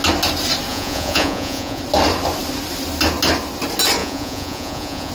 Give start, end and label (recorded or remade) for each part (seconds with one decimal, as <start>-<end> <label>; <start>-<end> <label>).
0.0-0.7 recorded; 0.7-1.8 remade; 1.8-4.0 recorded; 4.0-5.1 remade

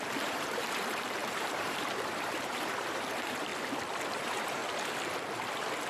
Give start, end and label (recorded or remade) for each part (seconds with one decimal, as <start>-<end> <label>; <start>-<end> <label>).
0.0-3.5 remade; 3.5-4.1 recorded; 4.1-4.6 remade; 4.6-5.9 recorded

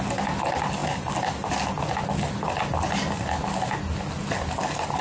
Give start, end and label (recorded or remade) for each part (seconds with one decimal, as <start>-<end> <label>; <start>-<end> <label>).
0.0-5.0 recorded

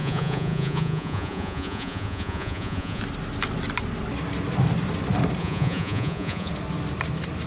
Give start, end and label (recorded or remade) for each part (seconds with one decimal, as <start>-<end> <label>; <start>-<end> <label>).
0.0-3.0 remade; 3.0-5.4 recorded; 5.4-6.5 remade; 6.5-7.5 recorded

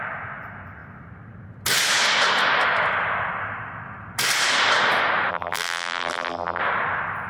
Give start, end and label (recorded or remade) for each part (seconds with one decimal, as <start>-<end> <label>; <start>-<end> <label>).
0.0-5.3 recorded; 5.3-6.6 remade; 6.6-7.3 recorded

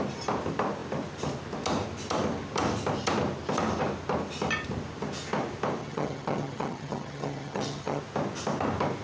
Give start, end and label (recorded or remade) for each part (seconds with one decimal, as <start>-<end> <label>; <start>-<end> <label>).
0.0-5.8 recorded; 5.8-8.0 remade; 8.0-9.0 recorded